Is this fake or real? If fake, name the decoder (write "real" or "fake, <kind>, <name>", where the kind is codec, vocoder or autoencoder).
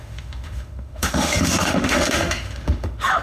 fake, autoencoder, DAC-VAE